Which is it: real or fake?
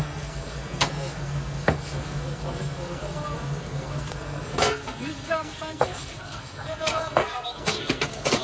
fake